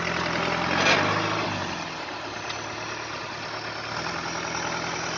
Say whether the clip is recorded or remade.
recorded